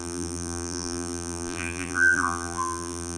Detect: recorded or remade remade